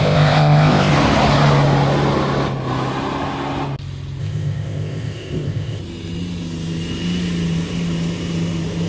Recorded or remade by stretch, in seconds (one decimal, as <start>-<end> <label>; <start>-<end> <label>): 0.0-0.9 remade; 0.9-4.2 recorded; 4.2-5.8 remade; 5.8-8.9 recorded

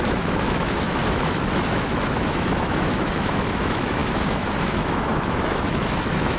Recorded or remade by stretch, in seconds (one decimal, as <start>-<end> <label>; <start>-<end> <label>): 0.0-6.4 remade